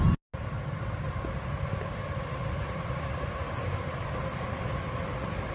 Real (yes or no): yes